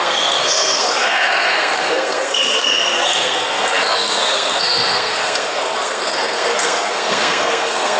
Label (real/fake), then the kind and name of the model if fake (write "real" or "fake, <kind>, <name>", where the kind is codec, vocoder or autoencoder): fake, codec, SNAC